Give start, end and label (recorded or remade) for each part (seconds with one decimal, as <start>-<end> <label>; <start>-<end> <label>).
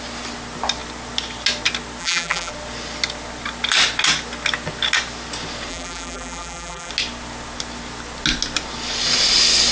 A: 0.0-2.0 recorded; 2.0-2.5 remade; 2.5-5.7 recorded; 5.7-6.9 remade; 6.9-9.7 recorded